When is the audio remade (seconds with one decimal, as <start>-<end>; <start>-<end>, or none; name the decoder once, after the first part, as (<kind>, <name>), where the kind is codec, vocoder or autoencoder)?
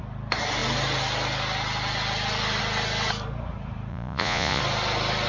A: 3.9-4.6 (vocoder, Vocos)